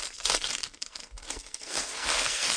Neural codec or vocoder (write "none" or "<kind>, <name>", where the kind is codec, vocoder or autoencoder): codec, SNAC